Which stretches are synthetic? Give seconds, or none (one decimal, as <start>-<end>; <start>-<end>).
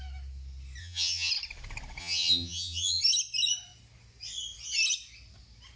0.8-1.3; 2.0-3.0